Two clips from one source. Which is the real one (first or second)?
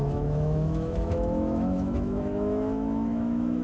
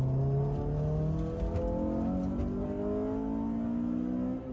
second